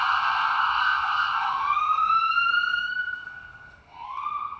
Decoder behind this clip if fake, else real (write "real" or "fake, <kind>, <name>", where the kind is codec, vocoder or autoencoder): fake, codec, SNAC